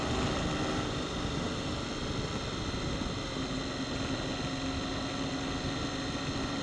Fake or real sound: real